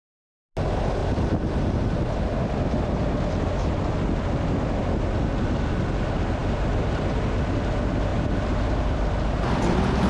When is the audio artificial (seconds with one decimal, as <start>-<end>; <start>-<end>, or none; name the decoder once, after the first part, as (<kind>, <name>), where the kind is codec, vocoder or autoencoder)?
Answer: 1.0-1.9 (vocoder, BigVGAN v2); 6.4-7.1; 8.1-10.1